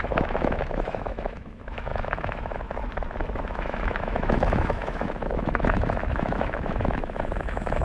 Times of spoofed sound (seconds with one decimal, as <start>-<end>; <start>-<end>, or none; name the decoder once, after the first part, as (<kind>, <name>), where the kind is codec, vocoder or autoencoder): 0.0-2.8 (autoencoder, DAC-VAE); 3.4-7.8